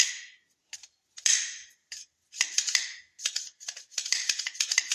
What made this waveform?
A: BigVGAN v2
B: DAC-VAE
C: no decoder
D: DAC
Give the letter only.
C